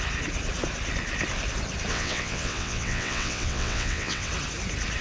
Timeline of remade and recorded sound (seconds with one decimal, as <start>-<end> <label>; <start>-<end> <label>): 0.0-1.9 recorded; 1.9-4.3 remade; 4.3-5.0 recorded

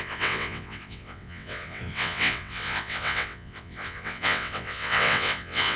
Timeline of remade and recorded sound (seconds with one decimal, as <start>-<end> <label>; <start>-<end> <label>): 0.0-5.8 remade